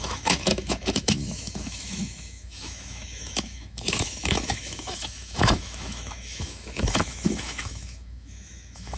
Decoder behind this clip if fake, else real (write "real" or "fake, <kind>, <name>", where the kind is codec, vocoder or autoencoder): fake, autoencoder, DAC-VAE